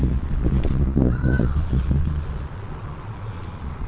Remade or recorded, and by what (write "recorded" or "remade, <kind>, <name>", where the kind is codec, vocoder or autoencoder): remade, vocoder, Vocos